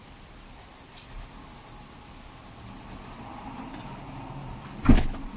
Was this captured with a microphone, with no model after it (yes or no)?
yes